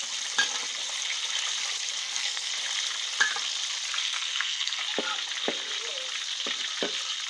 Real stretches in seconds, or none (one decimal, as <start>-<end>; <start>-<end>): 0.0-2.0; 2.5-4.0; 4.8-7.3